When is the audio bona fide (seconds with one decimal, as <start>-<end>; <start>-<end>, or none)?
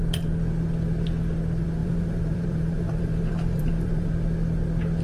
0.0-1.8; 4.1-5.0